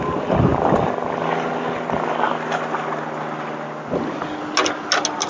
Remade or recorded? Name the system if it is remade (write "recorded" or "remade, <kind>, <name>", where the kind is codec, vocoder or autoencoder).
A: recorded